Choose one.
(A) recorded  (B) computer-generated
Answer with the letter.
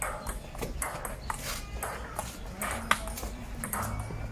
A